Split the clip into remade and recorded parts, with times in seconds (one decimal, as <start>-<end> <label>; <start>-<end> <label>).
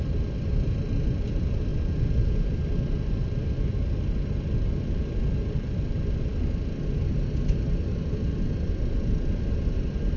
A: 0.0-6.3 remade; 6.3-7.5 recorded; 7.5-10.2 remade